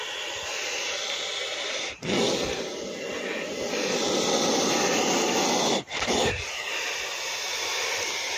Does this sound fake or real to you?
real